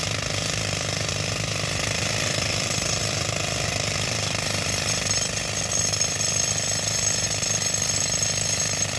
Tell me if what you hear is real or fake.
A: real